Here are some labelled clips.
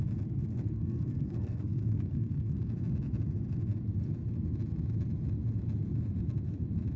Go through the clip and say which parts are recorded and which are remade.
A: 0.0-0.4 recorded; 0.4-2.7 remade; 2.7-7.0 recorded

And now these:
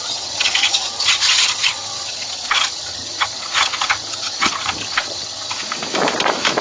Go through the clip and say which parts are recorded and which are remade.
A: 0.0-5.6 remade; 5.6-6.6 recorded